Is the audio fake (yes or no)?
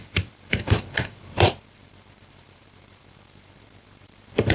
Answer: yes